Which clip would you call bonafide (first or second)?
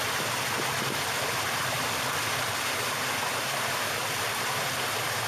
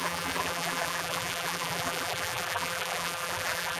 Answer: first